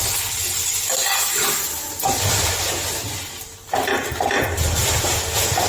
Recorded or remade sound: recorded